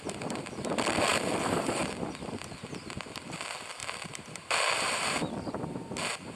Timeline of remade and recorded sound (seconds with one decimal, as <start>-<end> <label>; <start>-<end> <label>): 0.0-6.4 recorded